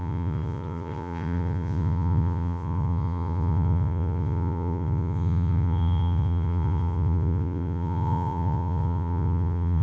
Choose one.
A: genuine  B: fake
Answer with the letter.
B